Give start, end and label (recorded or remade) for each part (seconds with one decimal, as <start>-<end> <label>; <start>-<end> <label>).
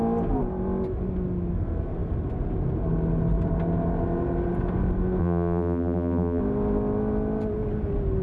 0.0-5.2 recorded; 5.2-6.4 remade; 6.4-8.2 recorded